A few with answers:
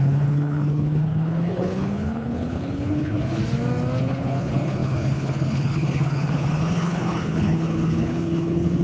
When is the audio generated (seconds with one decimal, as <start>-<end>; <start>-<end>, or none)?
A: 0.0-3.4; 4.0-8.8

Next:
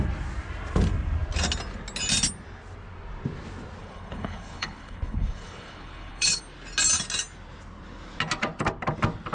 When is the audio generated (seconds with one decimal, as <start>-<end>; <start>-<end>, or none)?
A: 3.8-6.4

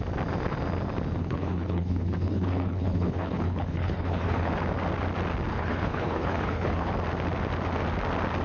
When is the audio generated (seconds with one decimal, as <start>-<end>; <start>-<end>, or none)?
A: 1.2-4.5; 5.5-6.9